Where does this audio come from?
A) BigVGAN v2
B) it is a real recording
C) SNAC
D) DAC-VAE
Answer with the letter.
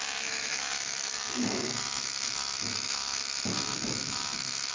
D